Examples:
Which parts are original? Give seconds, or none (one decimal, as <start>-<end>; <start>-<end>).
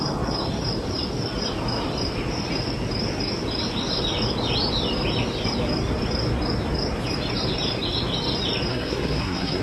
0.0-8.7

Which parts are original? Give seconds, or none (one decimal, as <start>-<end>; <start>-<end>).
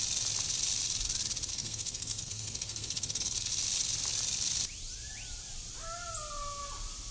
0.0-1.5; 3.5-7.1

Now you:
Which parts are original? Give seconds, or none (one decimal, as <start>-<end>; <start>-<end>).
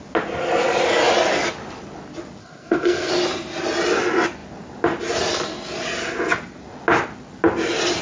0.0-2.4; 3.1-8.0